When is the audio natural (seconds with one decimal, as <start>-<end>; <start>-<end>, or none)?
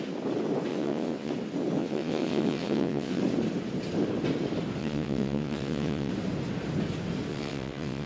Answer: 0.0-0.7; 1.3-1.8; 3.2-4.8; 6.1-7.3